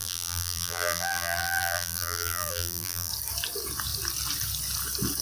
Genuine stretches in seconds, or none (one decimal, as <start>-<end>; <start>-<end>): 3.1-5.2